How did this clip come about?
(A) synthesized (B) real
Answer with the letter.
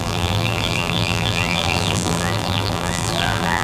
A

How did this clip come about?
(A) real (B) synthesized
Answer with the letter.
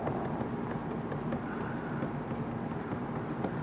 B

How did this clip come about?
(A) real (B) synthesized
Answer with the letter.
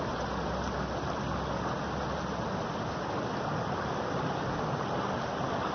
A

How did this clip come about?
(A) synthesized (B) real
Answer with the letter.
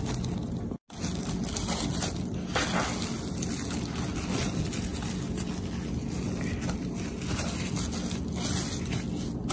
B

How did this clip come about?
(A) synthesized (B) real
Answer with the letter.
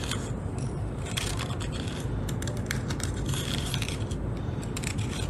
A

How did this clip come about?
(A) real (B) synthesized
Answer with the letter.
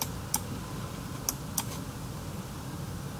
A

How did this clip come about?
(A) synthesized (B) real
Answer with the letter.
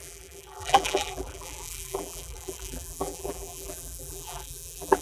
A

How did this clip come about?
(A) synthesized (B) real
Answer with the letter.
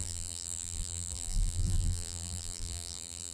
A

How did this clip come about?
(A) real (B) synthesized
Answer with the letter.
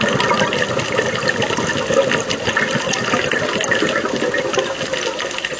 A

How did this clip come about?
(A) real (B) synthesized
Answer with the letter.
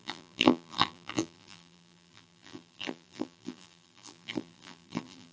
B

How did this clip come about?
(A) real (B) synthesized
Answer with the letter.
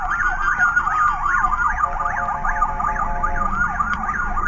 A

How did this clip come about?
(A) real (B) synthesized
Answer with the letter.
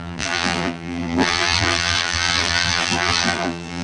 B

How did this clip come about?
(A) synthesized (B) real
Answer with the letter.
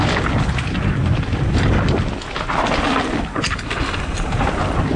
B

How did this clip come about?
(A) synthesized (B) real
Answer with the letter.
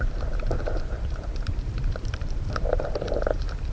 A